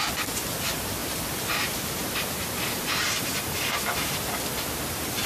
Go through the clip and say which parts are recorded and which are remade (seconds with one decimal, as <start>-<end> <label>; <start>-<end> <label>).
0.0-1.0 recorded; 1.0-4.2 remade; 4.2-5.3 recorded